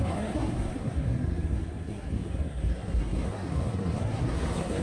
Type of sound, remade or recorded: remade